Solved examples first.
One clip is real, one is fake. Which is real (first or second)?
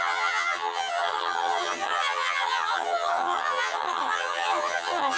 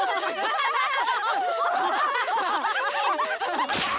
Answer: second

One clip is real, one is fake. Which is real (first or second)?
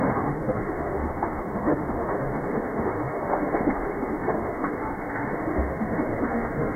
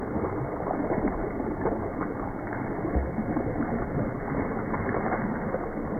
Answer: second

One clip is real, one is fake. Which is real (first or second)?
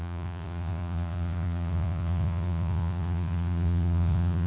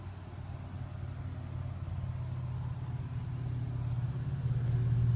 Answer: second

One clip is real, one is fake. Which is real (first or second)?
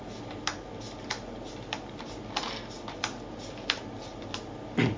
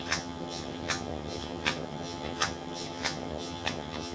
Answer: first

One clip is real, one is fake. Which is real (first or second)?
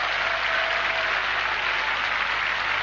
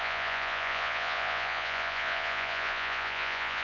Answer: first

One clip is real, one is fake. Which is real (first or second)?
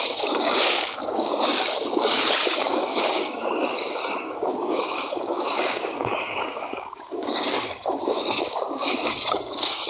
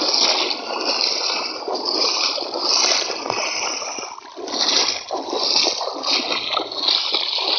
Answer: second